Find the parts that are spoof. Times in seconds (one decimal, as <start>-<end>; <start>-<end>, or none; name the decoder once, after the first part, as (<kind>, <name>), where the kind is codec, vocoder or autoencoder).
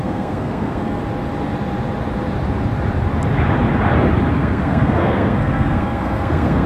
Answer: 0.0-1.0 (codec, SNAC); 4.3-6.7